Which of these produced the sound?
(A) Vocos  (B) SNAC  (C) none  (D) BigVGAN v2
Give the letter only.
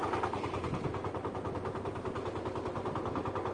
C